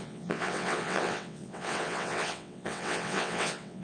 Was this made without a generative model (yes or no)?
no